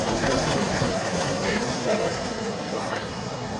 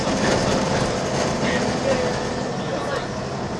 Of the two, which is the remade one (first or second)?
first